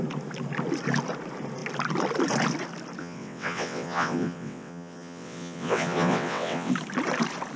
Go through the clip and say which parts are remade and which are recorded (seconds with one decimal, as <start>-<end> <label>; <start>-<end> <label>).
0.0-3.0 recorded; 3.0-6.7 remade; 6.7-7.6 recorded